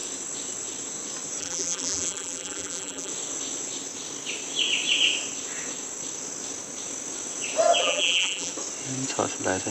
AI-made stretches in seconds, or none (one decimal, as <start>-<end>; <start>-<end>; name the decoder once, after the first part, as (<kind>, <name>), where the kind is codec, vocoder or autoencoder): 1.4-3.1 (vocoder, BigVGAN v2); 7.8-8.5